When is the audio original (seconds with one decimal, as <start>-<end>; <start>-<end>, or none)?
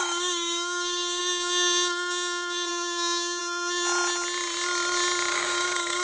1.2-2.7; 3.4-5.3